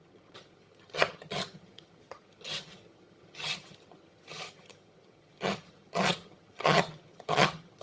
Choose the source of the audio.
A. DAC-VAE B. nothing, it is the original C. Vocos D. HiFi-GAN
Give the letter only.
D